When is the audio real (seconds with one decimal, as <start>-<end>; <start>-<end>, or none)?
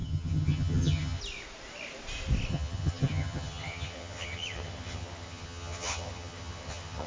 1.2-2.5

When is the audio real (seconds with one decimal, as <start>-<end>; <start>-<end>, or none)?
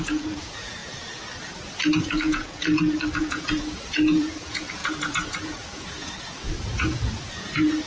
0.8-2.0; 2.6-3.2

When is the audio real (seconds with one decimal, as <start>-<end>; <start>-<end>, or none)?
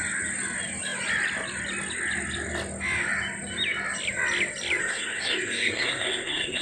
0.0-4.8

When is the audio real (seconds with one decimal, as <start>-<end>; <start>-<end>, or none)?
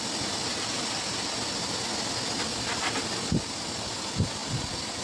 0.0-5.0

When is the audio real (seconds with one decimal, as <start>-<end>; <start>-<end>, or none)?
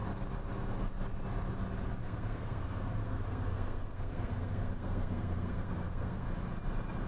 0.0-2.0; 6.3-7.1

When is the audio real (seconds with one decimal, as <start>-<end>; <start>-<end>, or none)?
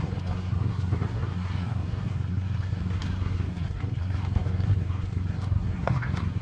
none